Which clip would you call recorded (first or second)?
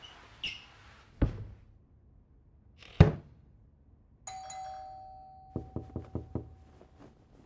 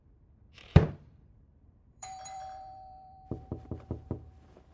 first